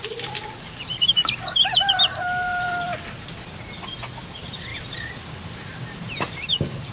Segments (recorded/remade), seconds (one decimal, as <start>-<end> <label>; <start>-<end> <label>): 0.0-2.9 remade; 2.9-4.3 recorded; 4.3-6.9 remade